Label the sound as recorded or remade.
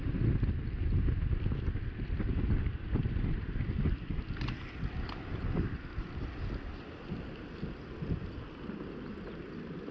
recorded